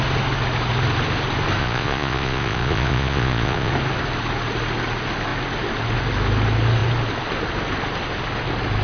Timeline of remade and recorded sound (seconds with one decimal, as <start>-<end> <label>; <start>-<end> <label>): 0.0-1.6 recorded; 1.6-3.7 remade; 3.7-8.8 recorded